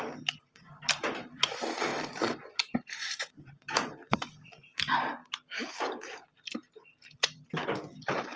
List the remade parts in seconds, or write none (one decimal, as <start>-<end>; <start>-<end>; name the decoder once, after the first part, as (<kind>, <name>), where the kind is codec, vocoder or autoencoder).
0.0-8.4 (vocoder, BigVGAN v2)